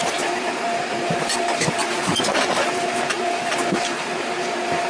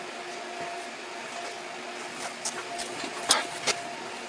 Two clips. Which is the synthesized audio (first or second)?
first